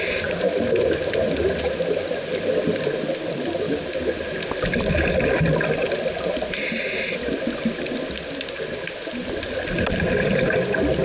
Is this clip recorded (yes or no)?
yes